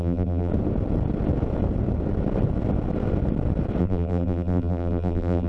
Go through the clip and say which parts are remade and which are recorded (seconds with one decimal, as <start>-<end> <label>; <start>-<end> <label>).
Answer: 0.0-0.5 remade; 0.5-3.8 recorded; 3.8-5.5 remade